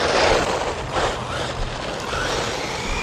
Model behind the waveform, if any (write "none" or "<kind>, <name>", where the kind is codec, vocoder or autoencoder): none